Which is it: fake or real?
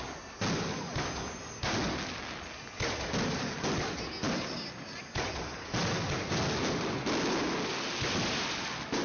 real